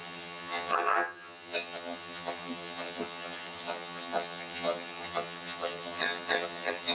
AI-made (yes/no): yes